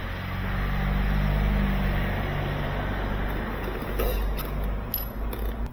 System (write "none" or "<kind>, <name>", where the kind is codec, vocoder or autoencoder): none